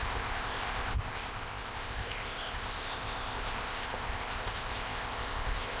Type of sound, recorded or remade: remade